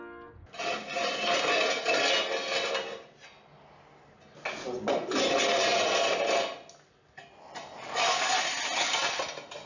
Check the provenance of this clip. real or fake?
real